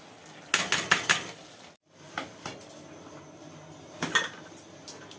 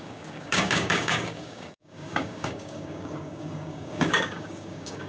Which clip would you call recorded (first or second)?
first